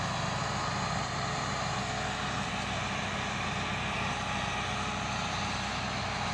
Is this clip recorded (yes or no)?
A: yes